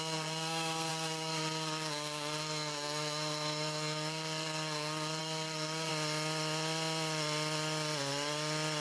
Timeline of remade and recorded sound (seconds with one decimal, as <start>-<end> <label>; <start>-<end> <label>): 0.0-5.9 remade; 5.9-8.8 recorded